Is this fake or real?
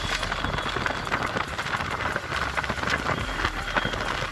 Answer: real